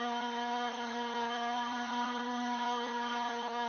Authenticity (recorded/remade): remade